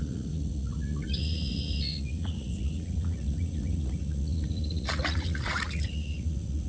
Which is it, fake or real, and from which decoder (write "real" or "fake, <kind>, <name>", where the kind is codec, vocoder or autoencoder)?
fake, vocoder, Vocos